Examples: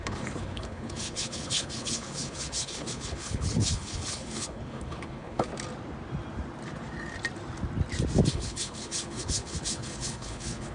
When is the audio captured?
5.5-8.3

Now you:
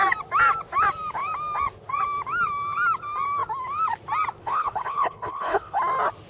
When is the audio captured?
0.0-4.4; 5.8-6.3

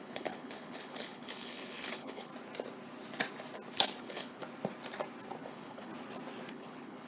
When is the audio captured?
2.3-4.0; 4.4-5.4; 5.9-6.5

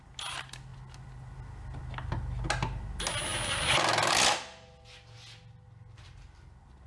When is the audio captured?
0.0-6.9

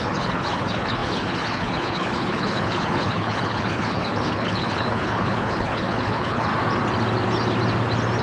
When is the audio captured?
6.5-8.2